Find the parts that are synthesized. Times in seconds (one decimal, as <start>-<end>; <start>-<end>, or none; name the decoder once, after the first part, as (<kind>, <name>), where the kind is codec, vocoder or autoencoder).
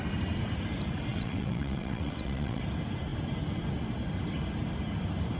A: 1.1-2.6 (vocoder, WaveNeXt)